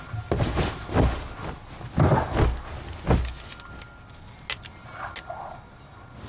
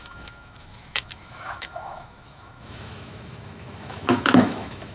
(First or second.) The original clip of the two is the first